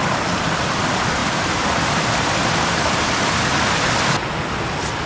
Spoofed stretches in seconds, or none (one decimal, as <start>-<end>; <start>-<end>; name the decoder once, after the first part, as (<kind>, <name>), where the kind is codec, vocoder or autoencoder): none